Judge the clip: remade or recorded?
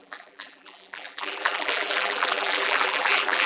remade